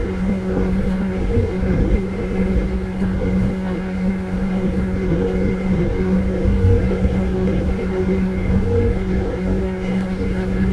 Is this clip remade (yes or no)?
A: yes